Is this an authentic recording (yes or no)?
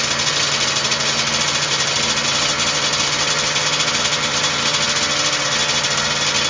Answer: yes